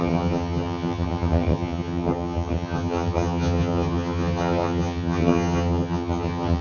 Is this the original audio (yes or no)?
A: no